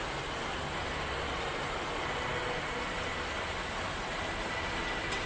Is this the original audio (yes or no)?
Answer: yes